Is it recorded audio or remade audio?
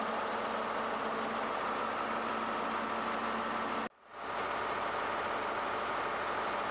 recorded